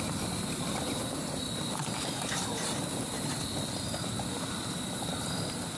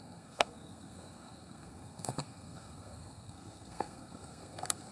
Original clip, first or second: first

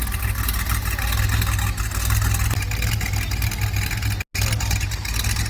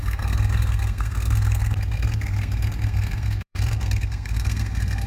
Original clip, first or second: first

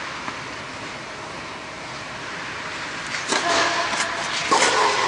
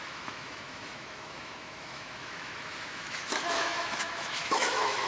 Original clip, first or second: first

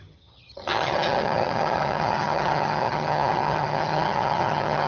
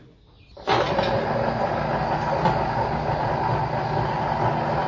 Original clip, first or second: second